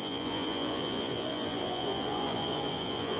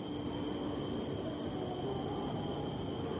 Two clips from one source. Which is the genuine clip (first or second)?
second